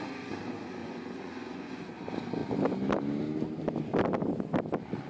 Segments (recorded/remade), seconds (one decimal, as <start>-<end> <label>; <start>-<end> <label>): 0.0-0.8 recorded; 0.8-1.9 remade; 1.9-5.1 recorded